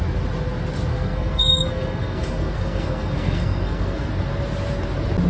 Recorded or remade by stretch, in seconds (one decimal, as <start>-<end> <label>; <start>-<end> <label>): 0.0-0.9 recorded; 0.9-4.1 remade; 4.1-5.3 recorded